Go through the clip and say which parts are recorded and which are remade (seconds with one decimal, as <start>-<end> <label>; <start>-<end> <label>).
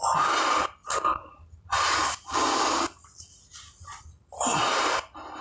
0.0-5.4 recorded